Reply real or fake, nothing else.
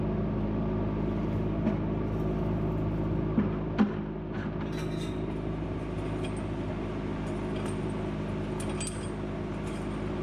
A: real